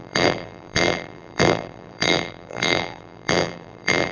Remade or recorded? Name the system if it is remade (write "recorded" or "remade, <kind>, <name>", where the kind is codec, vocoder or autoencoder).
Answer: remade, vocoder, BigVGAN v2